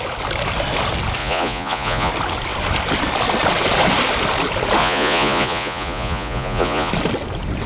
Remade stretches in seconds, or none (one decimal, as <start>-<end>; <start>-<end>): 1.2-2.1; 4.8-6.9